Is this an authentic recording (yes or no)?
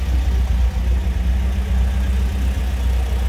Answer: yes